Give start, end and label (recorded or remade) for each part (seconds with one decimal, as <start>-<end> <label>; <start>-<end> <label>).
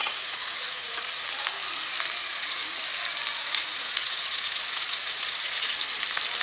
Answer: 0.0-1.2 remade; 1.2-2.2 recorded; 2.2-2.8 remade; 2.8-3.3 recorded; 3.3-5.8 remade; 5.8-6.4 recorded